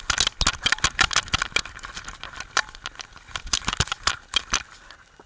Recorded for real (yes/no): yes